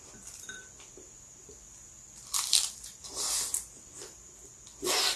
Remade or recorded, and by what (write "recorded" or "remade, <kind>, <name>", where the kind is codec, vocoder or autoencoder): recorded